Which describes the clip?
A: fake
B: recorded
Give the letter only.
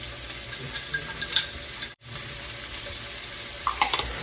A